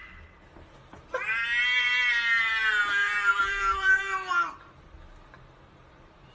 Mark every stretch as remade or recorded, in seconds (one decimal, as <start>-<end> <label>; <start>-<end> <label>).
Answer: 0.0-3.0 recorded; 3.0-4.0 remade; 4.0-6.3 recorded